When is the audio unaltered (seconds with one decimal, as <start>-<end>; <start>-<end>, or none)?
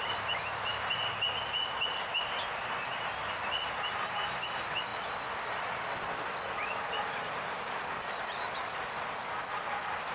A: 0.0-10.1